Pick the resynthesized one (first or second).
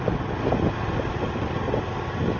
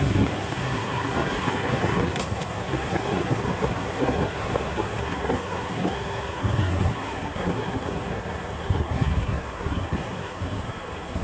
second